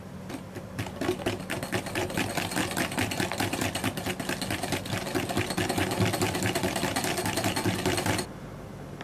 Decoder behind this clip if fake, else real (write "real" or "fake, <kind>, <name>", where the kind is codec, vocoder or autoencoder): real